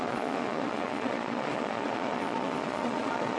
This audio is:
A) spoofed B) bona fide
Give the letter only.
A